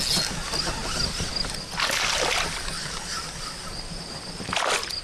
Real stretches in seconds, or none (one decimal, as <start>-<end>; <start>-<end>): 0.0-5.0